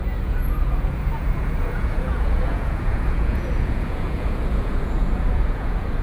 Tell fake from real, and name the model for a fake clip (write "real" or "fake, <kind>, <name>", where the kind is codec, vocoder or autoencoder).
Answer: fake, vocoder, Vocos